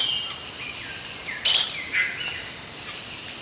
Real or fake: real